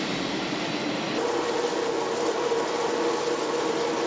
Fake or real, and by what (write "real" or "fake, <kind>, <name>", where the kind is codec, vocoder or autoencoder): real